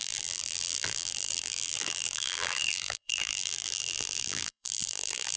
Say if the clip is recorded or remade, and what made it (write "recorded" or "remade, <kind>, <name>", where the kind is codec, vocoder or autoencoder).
remade, vocoder, BigVGAN v2